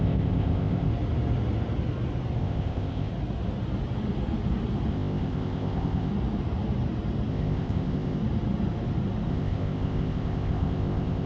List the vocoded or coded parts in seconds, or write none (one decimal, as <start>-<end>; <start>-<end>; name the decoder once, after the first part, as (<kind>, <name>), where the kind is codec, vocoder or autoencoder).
0.0-0.9 (codec, ZipCodec); 2.4-3.1; 4.9-6.1; 7.3-8.2; 9.3-11.3